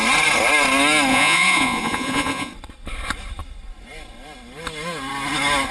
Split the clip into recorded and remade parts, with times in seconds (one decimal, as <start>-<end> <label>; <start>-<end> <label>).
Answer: 0.0-1.1 recorded; 1.1-2.5 remade; 2.5-5.7 recorded